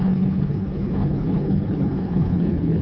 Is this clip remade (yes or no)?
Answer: yes